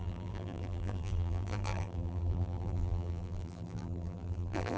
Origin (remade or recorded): remade